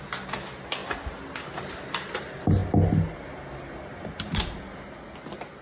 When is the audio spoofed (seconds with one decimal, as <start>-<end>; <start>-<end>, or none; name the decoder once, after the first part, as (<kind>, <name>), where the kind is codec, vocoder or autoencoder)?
none